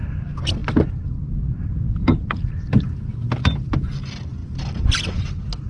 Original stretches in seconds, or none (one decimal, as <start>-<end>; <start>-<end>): 0.0-5.7